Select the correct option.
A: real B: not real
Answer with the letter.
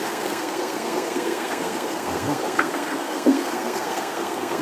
B